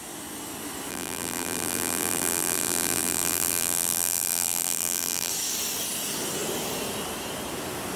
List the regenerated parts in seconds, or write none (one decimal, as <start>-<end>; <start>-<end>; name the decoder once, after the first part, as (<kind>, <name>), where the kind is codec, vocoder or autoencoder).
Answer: 0.9-5.3 (vocoder, BigVGAN v2)